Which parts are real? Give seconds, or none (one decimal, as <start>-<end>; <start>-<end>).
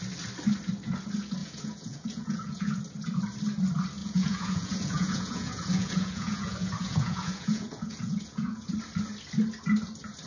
0.0-1.4; 2.8-4.0; 8.7-10.3